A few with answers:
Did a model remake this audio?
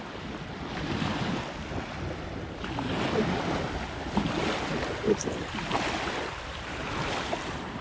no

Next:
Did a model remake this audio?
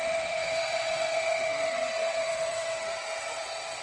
yes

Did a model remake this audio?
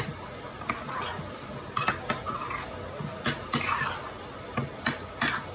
no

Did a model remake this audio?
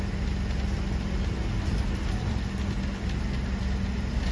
no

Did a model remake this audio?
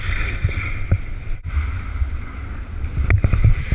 no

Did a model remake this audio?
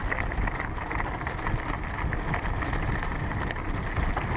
no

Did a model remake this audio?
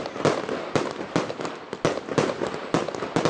no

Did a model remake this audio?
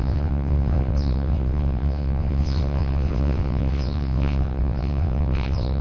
yes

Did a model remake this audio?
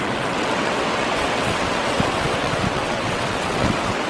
yes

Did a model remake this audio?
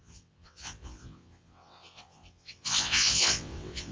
yes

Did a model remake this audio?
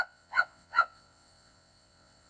yes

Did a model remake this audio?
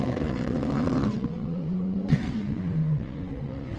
yes